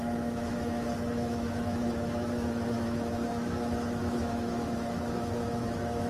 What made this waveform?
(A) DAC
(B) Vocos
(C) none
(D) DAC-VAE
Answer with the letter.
D